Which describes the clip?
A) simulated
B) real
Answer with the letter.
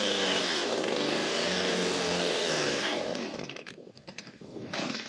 A